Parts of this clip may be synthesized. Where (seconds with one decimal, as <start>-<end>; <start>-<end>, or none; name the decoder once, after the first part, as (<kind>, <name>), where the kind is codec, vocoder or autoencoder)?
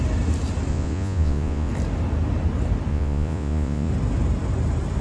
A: 0.7-1.7 (vocoder, Vocos); 2.9-3.9